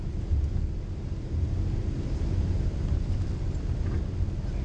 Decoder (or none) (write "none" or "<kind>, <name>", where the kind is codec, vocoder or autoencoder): none